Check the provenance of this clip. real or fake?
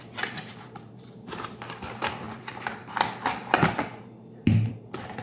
fake